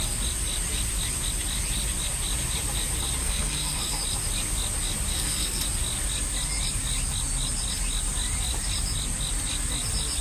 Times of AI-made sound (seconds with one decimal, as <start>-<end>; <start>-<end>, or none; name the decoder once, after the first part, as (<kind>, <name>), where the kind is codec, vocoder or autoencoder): 3.2-4.0 (codec, SNAC); 5.1-5.6